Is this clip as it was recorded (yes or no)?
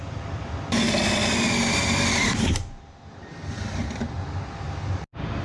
yes